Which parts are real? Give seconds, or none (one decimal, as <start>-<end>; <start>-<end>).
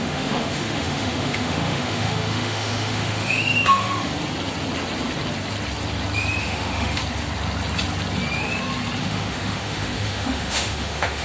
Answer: 4.1-6.4; 7.0-9.0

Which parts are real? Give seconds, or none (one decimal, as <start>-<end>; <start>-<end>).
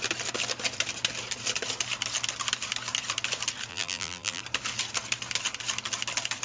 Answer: 0.0-3.7; 4.4-6.4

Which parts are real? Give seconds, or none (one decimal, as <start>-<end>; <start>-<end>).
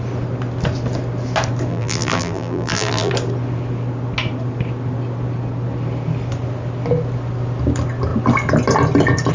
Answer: 0.0-1.7; 3.1-9.3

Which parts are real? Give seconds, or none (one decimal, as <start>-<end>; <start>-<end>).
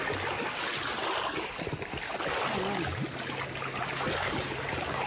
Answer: 0.0-5.1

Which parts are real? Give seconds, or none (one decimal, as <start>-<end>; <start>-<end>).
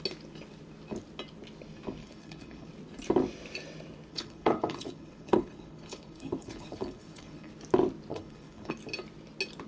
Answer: 0.0-2.0; 2.7-4.1; 7.5-8.1; 8.7-9.7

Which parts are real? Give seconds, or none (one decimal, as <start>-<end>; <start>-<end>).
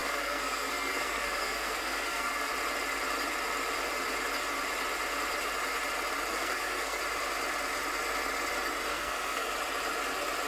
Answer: 2.5-6.3; 7.0-8.9; 9.5-10.5